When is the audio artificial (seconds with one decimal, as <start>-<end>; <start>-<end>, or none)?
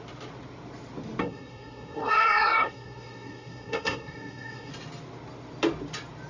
1.2-4.7